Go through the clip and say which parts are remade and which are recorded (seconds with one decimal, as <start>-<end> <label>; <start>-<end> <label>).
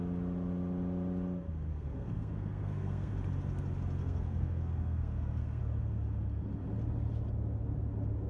0.0-1.7 recorded; 1.7-3.1 remade; 3.1-4.0 recorded; 4.0-5.6 remade; 5.6-8.3 recorded